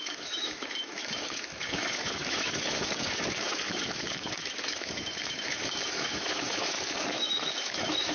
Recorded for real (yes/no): no